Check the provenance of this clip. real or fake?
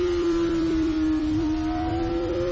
fake